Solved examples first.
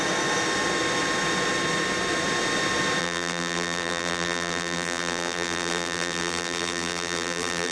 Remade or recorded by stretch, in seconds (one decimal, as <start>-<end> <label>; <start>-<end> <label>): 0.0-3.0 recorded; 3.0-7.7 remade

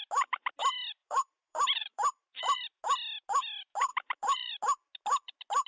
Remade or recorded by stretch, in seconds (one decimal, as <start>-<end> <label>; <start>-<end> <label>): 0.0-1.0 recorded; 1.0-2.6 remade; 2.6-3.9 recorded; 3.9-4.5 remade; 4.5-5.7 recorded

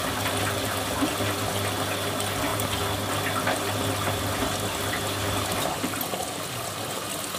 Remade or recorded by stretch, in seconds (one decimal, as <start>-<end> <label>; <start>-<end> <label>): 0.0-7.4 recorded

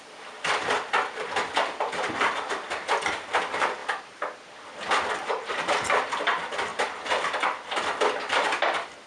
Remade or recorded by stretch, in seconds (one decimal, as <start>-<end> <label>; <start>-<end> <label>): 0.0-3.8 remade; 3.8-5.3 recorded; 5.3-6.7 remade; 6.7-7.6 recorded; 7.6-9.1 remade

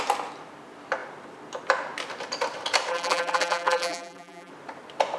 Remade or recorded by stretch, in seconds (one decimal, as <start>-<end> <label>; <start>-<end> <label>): 0.0-2.9 recorded; 2.9-4.5 remade; 4.5-5.2 recorded